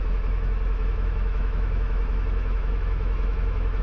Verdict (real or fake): fake